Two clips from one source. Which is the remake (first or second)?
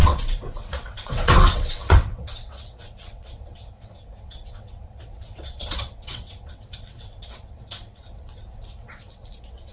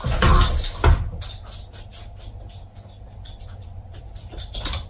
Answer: first